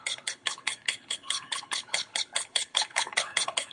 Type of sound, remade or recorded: remade